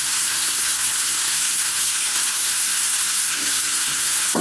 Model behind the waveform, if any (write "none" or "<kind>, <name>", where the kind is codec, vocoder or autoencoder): codec, SNAC